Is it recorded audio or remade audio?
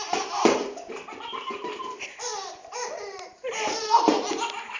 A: recorded